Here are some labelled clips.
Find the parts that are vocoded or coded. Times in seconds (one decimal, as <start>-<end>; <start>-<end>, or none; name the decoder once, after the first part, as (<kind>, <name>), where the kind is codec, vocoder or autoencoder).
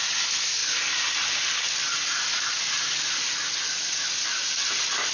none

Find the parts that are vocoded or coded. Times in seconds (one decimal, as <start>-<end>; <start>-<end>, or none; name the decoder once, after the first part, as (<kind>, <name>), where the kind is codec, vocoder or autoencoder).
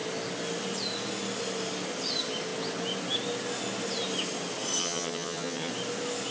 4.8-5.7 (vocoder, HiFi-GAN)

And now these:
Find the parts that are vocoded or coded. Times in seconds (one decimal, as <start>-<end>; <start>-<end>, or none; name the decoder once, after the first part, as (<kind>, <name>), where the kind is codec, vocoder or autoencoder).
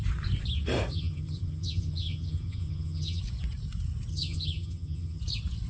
0.9-3.2 (vocoder, HiFi-GAN); 4.1-5.2